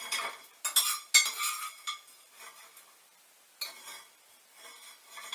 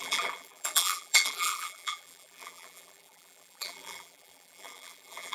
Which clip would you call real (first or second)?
first